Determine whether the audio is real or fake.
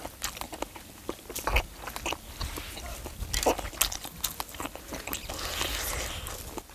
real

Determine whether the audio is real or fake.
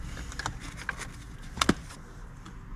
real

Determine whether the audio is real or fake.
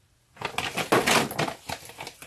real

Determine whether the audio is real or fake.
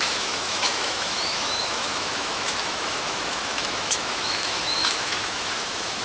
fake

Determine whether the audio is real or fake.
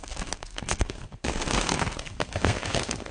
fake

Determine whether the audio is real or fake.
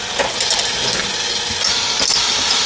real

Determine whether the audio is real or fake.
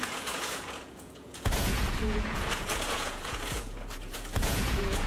fake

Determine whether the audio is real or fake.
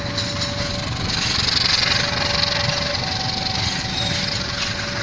real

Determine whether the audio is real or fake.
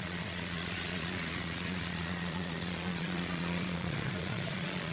fake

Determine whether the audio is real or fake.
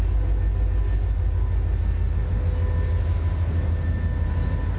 real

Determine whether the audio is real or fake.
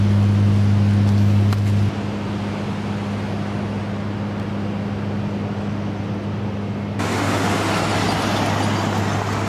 real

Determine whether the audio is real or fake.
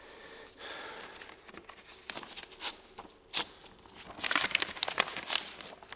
real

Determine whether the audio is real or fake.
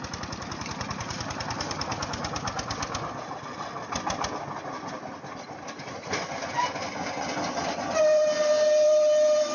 fake